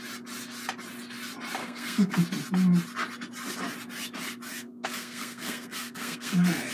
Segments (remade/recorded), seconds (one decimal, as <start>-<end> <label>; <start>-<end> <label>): 0.0-1.6 recorded; 1.6-2.2 remade; 2.2-4.5 recorded; 4.5-6.7 remade